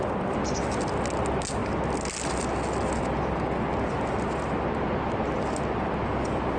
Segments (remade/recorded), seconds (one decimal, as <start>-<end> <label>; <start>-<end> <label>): 0.0-6.6 recorded